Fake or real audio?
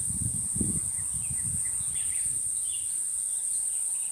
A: fake